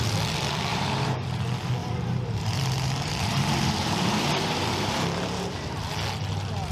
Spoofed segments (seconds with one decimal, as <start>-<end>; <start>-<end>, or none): 0.7-1.4; 1.8-5.8

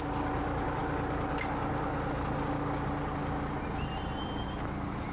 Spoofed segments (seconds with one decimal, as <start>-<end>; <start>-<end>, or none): 0.0-0.8; 3.9-5.1

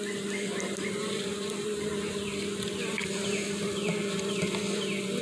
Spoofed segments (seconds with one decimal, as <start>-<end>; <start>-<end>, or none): 1.0-1.9; 2.3-4.6

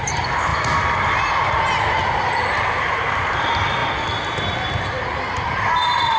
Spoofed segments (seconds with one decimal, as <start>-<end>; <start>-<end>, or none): 0.0-0.5; 2.3-3.8; 4.8-6.2

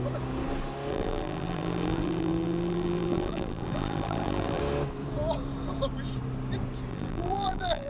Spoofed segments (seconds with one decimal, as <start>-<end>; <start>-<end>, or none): 0.9-4.6; 6.9-7.9

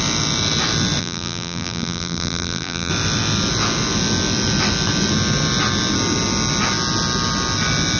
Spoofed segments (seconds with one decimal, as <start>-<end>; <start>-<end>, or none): 1.0-2.9

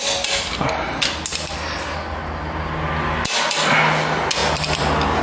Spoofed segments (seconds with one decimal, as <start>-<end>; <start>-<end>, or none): 4.4-5.2

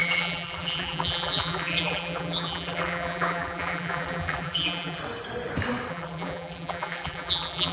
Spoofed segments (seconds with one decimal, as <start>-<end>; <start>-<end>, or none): 0.0-5.0; 5.9-7.7